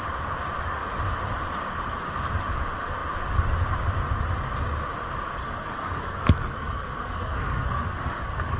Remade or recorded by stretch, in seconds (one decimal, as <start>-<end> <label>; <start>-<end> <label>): 0.0-5.4 recorded; 5.4-8.6 remade